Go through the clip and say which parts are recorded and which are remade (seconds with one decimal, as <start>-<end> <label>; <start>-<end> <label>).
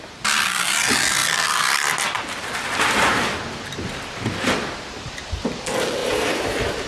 0.0-6.0 recorded; 6.0-6.9 remade